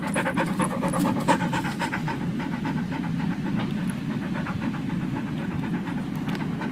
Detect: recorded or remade recorded